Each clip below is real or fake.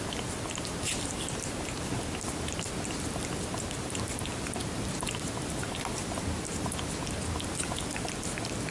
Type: real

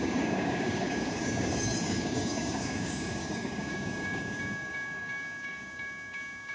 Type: fake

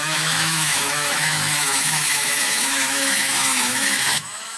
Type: fake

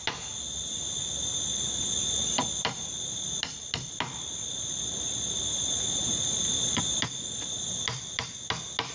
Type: real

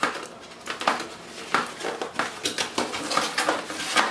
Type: real